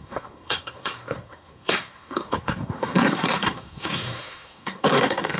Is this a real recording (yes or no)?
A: no